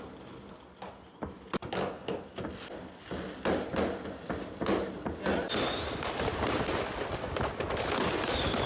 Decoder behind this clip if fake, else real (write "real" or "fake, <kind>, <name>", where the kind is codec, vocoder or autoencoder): real